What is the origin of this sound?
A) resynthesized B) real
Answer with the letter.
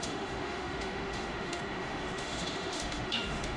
A